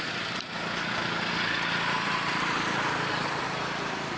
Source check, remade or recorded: recorded